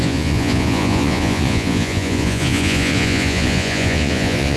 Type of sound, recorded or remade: remade